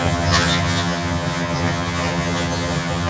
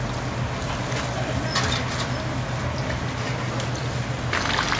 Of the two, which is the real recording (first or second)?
second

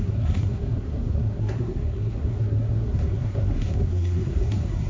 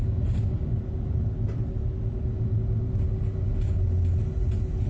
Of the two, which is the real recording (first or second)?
second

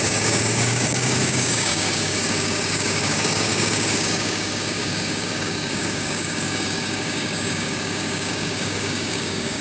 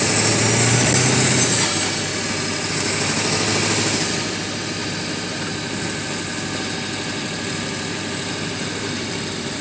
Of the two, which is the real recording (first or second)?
second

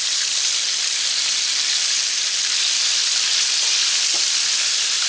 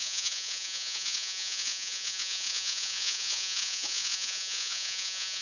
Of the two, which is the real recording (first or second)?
first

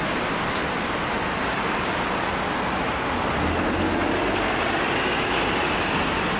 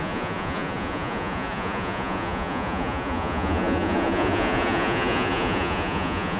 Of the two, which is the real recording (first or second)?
first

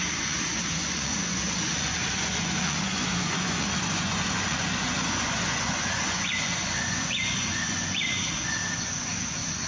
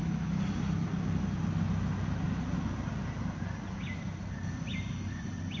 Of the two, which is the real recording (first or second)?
second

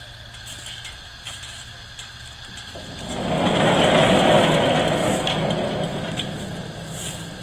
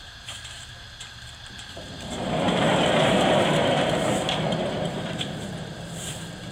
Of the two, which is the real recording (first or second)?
first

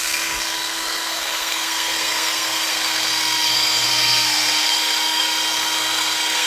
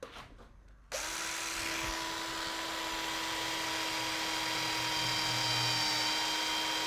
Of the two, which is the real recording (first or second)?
second